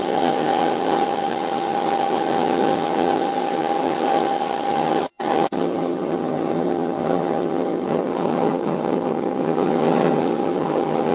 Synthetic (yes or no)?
yes